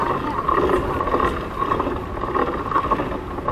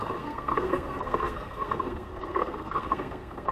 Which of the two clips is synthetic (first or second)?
second